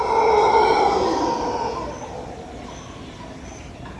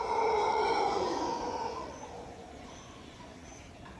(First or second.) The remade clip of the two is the second